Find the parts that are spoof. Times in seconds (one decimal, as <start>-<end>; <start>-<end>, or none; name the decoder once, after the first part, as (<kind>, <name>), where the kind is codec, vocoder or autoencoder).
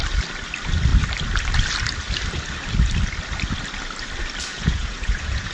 4.5-5.5 (vocoder, Vocos)